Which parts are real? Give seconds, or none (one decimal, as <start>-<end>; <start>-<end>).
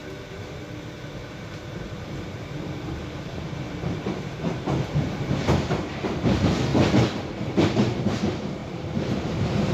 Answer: 0.0-1.1; 6.7-7.3